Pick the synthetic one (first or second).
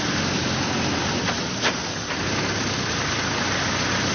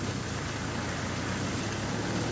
first